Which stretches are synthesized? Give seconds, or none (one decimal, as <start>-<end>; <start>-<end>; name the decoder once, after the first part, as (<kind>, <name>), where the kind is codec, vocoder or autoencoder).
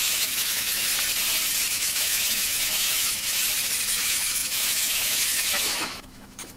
0.0-0.9 (autoencoder, DAC-VAE); 1.7-3.4; 3.9-6.6